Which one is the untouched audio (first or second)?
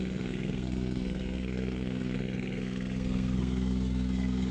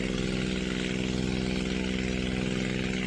second